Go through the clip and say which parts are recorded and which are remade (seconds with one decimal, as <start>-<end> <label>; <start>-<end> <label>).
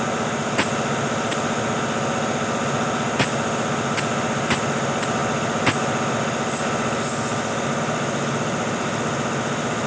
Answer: 0.0-9.9 recorded